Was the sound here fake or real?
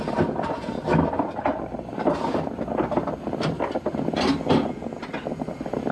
real